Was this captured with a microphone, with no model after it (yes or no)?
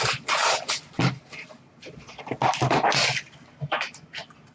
yes